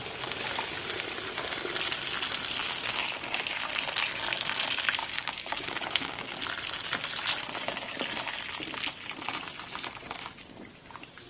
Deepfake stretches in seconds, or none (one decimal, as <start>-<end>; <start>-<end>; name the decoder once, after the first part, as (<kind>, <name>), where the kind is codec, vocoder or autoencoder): 2.6-3.4 (codec, DAC); 5.0-6.3

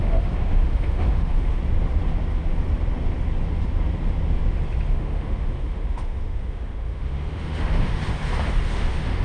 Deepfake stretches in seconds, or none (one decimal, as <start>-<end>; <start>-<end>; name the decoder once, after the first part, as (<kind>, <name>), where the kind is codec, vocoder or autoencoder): 0.0-1.6 (autoencoder, DAC-VAE); 4.9-8.0; 8.7-9.2